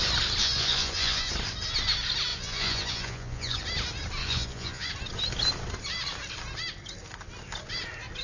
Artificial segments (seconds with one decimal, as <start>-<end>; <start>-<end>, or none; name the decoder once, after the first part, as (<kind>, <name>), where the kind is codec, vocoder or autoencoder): 0.4-1.3 (vocoder, Vocos); 2.3-3.6; 4.2-4.9